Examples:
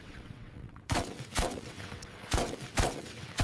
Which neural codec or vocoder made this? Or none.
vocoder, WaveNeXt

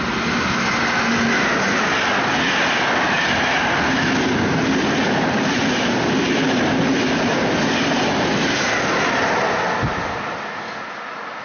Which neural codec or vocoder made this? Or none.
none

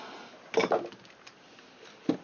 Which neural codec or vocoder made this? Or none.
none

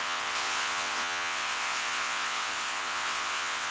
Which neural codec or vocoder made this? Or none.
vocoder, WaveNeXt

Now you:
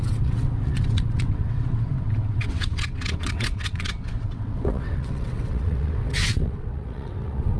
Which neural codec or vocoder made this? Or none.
vocoder, WaveNeXt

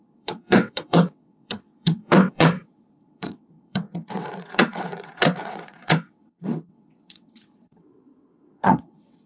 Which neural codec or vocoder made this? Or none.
vocoder, WaveNeXt